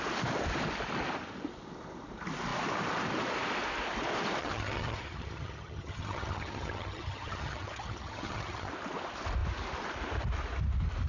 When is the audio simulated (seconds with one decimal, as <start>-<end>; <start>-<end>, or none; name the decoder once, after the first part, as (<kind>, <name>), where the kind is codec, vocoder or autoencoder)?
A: 4.4-8.7 (vocoder, HiFi-GAN)